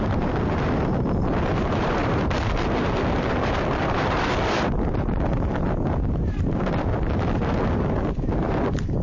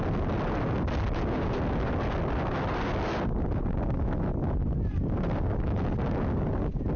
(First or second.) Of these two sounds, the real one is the second